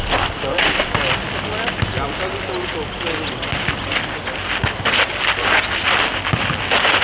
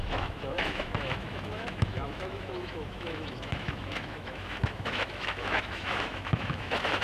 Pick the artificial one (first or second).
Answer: second